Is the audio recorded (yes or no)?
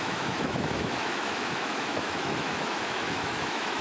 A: no